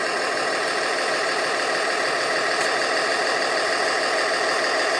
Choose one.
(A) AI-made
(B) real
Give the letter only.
B